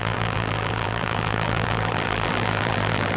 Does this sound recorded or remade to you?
remade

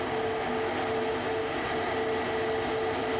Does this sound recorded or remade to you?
recorded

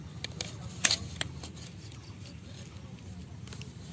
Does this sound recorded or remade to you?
recorded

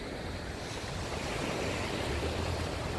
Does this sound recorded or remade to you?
recorded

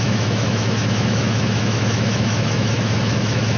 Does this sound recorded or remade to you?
remade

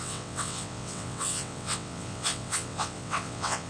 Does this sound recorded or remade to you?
remade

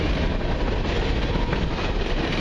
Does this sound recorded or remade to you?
recorded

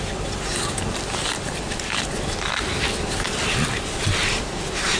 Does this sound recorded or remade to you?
recorded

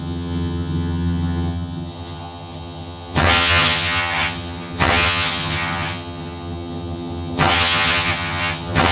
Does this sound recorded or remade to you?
remade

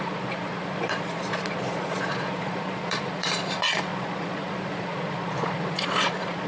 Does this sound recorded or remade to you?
remade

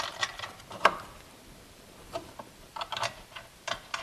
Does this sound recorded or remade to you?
remade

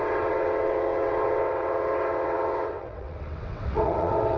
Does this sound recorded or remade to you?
remade